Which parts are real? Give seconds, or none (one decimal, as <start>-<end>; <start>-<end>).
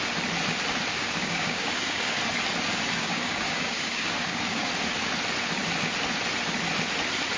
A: 0.0-0.9; 2.2-3.0; 4.7-7.4